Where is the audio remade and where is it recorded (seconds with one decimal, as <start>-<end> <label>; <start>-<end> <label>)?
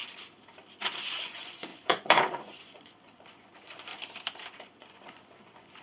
0.0-1.0 recorded; 1.0-3.9 remade; 3.9-4.8 recorded; 4.8-5.8 remade